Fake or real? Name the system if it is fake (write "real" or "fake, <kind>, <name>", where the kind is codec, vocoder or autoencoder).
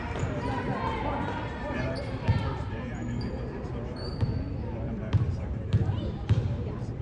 fake, vocoder, BigVGAN v2